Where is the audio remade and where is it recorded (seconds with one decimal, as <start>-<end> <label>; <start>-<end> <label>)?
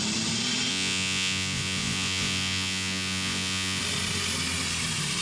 0.0-0.7 recorded; 0.7-3.8 remade; 3.8-5.2 recorded